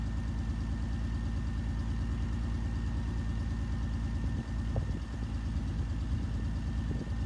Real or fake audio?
real